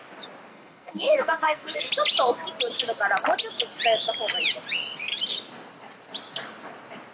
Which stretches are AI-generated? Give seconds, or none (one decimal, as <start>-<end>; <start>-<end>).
0.5-1.9